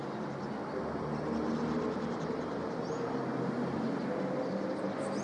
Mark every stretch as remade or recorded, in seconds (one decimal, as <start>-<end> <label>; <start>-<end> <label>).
0.0-5.2 recorded